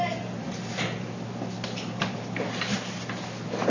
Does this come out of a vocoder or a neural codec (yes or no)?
no